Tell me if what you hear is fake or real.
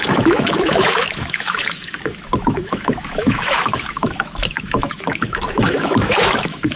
fake